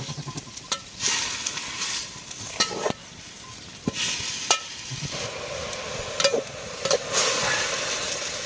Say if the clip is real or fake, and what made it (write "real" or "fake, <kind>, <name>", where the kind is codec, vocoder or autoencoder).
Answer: real